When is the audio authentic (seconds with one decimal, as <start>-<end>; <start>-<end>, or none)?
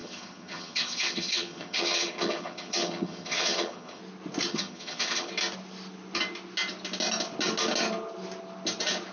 4.0-4.5; 5.3-9.1